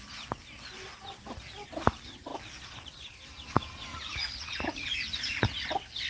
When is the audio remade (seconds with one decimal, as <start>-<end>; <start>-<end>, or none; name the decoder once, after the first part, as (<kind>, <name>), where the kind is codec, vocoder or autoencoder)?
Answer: 3.9-5.6 (vocoder, Vocos)